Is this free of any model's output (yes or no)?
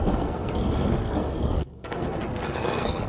no